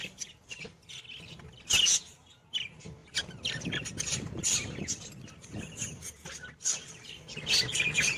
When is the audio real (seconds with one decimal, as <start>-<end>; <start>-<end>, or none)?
0.0-3.0; 7.1-8.2